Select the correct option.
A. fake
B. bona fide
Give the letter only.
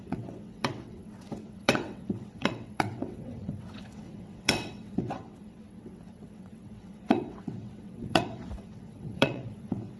A